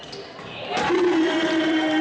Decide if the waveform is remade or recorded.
remade